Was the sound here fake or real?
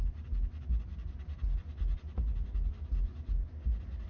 real